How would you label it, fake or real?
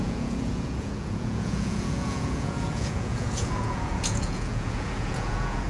fake